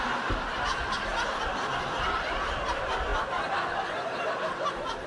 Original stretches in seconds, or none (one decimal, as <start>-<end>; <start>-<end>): 0.0-5.1

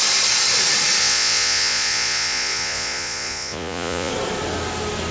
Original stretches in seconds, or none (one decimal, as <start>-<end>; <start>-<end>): 0.0-1.0; 4.1-5.1